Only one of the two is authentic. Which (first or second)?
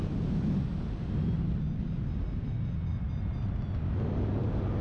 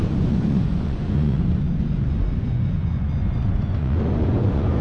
first